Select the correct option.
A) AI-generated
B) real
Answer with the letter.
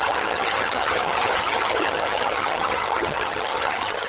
A